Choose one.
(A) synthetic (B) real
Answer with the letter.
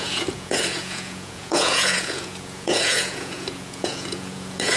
A